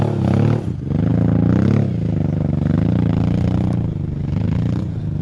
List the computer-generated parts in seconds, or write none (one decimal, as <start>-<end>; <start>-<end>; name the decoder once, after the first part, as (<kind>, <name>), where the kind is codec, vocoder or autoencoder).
none